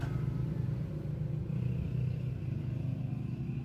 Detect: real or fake real